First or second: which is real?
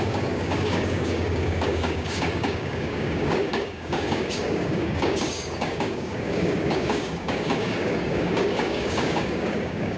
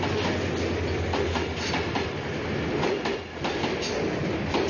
second